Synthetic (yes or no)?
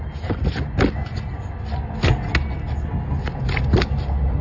no